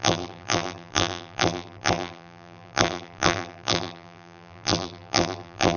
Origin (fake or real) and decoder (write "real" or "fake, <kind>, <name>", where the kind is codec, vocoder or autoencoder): fake, vocoder, BigVGAN v2